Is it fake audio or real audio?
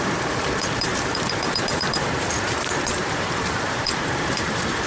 fake